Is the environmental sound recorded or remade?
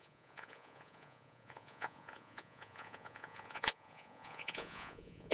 remade